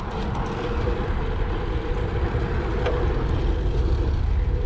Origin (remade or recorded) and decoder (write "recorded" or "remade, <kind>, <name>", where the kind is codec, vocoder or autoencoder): recorded